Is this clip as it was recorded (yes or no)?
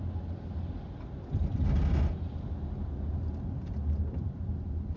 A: yes